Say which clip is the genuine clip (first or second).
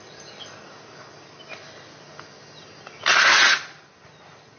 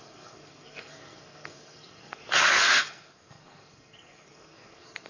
first